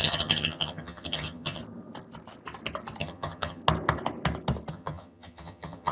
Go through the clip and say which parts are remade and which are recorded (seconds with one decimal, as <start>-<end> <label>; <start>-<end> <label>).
0.0-1.6 remade; 1.6-3.0 recorded; 3.0-3.6 remade; 3.6-4.7 recorded; 4.7-5.9 remade